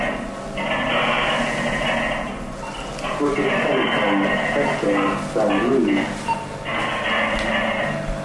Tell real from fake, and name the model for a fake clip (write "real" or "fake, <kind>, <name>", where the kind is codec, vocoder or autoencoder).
real